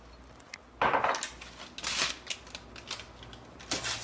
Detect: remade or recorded recorded